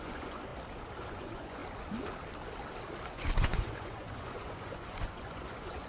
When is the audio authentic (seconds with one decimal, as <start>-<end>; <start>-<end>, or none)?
0.5-1.1; 1.6-3.1